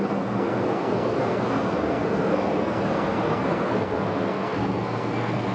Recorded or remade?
remade